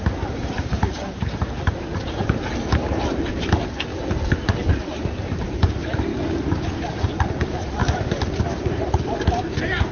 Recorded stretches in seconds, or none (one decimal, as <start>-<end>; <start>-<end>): 3.9-4.7; 6.1-7.2; 7.8-8.4